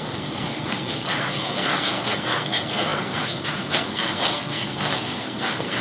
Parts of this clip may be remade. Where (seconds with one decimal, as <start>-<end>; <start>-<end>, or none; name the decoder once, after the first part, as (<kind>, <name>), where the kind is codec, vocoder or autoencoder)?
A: 0.0-5.8 (codec, SNAC)